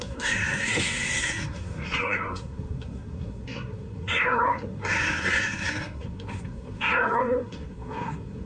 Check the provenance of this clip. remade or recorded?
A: remade